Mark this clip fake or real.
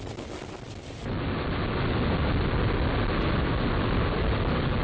real